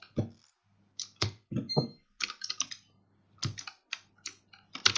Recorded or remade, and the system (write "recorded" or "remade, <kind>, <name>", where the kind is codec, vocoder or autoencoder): recorded